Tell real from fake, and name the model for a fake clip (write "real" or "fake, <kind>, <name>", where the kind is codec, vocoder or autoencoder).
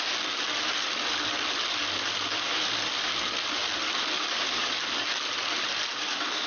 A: real